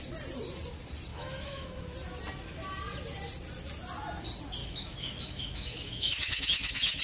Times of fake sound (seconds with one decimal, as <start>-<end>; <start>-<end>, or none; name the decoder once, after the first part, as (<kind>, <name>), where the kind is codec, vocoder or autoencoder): 1.1-1.8 (autoencoder, DAC-VAE); 4.6-7.0